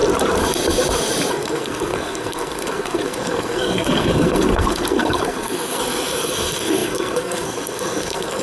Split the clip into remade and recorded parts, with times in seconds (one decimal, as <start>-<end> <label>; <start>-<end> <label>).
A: 0.0-1.3 recorded; 1.3-8.4 remade